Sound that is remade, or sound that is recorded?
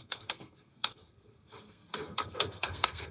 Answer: remade